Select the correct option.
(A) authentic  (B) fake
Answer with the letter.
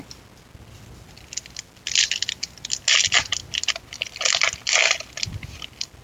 A